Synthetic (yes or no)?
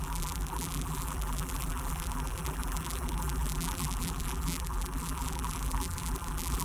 yes